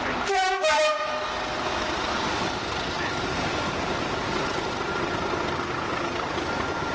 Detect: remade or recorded recorded